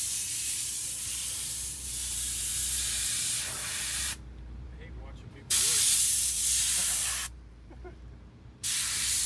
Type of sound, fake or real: fake